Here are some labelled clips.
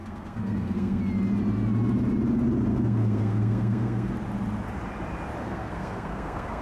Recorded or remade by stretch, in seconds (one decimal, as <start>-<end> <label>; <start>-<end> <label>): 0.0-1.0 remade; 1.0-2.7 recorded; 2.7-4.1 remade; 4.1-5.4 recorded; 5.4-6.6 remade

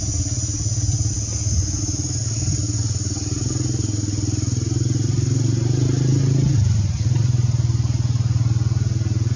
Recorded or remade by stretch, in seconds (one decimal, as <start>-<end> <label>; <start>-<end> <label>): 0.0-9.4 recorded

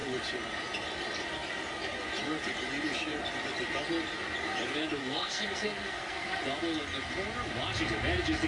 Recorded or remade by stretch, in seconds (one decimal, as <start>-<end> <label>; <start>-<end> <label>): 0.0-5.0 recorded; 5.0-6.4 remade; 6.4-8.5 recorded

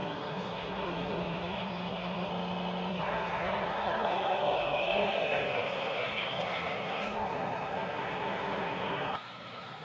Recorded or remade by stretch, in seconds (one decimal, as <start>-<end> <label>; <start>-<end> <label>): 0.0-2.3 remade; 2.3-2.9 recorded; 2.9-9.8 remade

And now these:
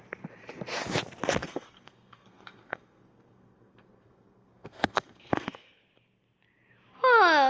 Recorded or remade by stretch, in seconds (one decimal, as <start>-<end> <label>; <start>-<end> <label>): 0.0-1.4 recorded; 1.4-5.9 remade; 5.9-7.5 recorded

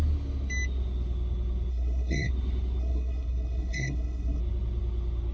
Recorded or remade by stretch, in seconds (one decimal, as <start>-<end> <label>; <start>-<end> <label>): 0.0-1.7 recorded; 1.7-2.3 remade; 2.3-2.8 recorded; 2.8-4.4 remade; 4.4-5.3 recorded

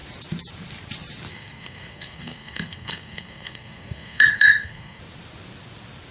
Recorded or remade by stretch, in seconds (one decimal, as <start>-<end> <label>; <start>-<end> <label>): 0.0-1.3 recorded; 1.3-5.0 remade; 5.0-6.1 recorded

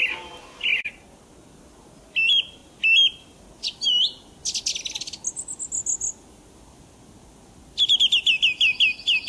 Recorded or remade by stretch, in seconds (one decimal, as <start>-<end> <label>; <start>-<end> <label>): 0.0-9.3 recorded